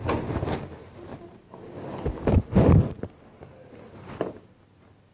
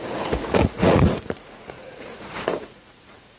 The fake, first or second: second